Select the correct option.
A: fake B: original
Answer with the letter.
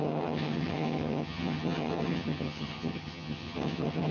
A